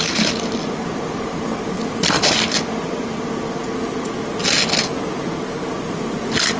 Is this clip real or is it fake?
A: real